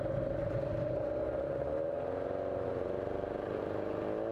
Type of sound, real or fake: real